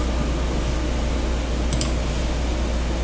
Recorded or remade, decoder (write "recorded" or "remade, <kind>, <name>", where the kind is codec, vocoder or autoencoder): recorded